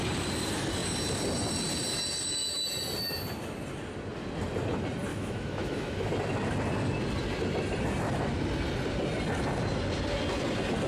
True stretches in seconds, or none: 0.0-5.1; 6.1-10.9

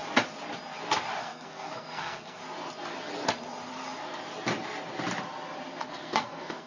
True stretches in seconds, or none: 0.0-1.2; 2.4-5.8

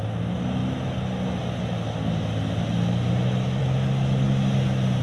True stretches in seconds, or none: 0.0-5.0

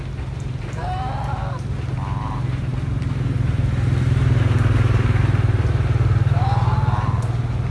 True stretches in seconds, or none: 0.0-7.7

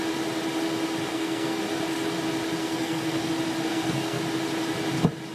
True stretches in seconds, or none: 0.0-1.1; 1.6-2.6; 3.3-3.7; 4.2-5.3

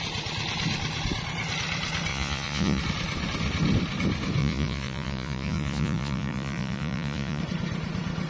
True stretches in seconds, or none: 0.0-2.1; 2.8-4.4; 7.4-8.3

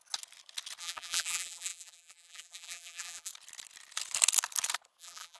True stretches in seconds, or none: 0.0-0.8; 3.3-5.0

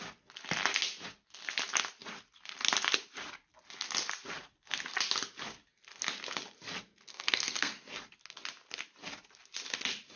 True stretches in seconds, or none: 0.0-7.1; 7.7-10.2